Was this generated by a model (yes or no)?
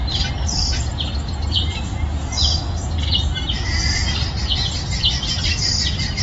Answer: no